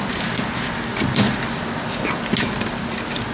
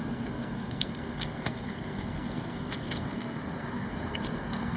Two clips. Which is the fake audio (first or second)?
second